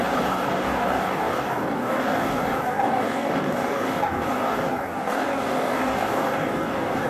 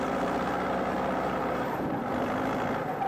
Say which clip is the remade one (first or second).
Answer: first